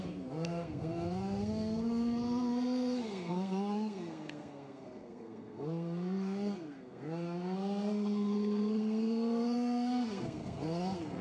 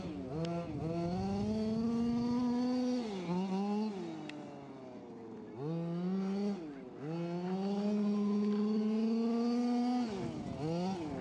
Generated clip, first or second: first